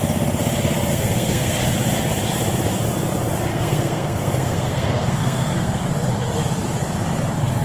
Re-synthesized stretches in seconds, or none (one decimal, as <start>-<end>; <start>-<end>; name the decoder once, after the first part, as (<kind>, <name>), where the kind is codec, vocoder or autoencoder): 0.9-1.6 (codec, SNAC); 3.5-5.8